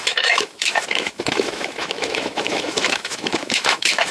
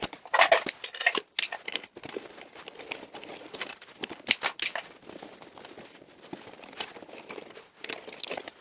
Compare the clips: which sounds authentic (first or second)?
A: second